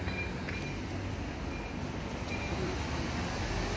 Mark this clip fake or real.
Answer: real